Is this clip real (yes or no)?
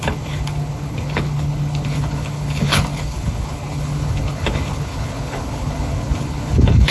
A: no